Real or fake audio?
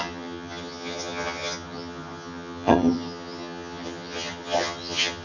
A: fake